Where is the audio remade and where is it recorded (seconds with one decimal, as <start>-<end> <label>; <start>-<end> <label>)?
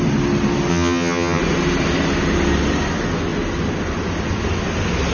0.0-0.7 recorded; 0.7-1.4 remade; 1.4-5.1 recorded